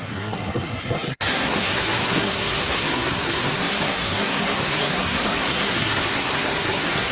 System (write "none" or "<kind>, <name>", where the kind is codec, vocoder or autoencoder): codec, SNAC